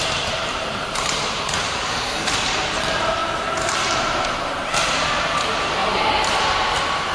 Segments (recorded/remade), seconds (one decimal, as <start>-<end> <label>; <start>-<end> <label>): 0.0-3.2 remade; 3.2-4.0 recorded; 4.0-7.1 remade

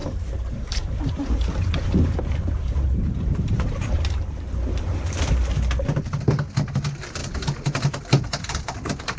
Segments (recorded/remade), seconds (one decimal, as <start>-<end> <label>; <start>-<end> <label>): 0.0-4.8 remade; 4.8-9.2 recorded

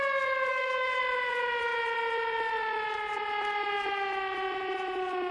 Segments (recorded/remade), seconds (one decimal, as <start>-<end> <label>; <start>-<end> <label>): 0.0-0.5 recorded; 0.5-1.0 remade; 1.0-5.3 recorded